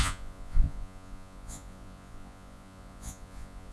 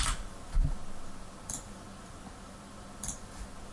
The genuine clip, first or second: second